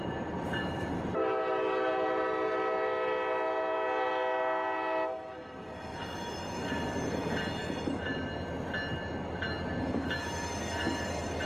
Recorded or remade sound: recorded